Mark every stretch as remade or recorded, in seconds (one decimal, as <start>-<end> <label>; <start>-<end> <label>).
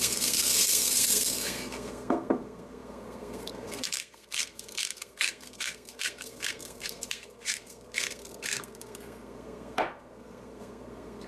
0.0-11.3 remade